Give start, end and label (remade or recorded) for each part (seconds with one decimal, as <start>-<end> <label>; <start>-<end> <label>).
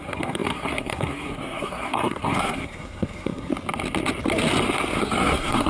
0.0-3.5 remade; 3.5-5.0 recorded; 5.0-5.7 remade